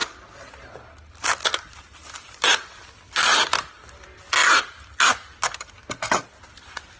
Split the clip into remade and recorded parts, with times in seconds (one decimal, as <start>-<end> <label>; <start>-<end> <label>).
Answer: 0.0-1.7 recorded; 1.7-4.4 remade; 4.4-6.5 recorded; 6.5-7.0 remade